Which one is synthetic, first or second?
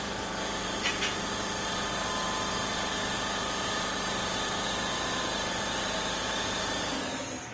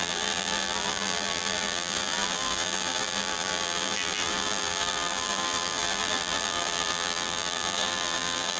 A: second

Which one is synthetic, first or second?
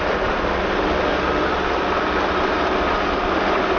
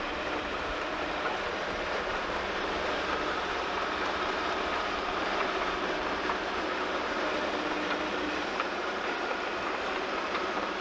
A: second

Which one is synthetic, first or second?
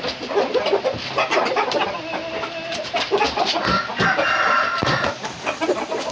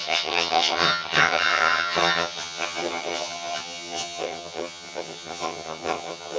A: second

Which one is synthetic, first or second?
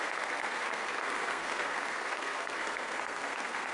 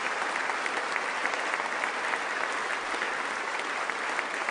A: first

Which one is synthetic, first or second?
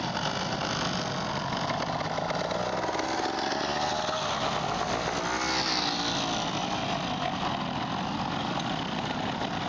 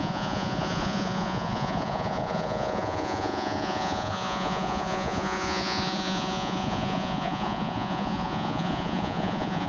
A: second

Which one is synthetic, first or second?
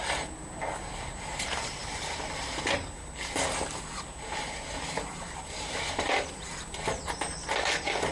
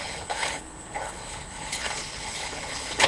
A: second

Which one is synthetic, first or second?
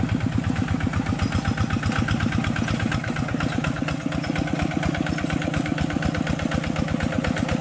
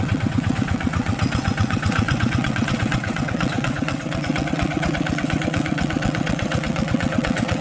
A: second